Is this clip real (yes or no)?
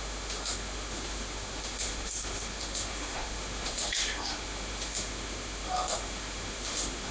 no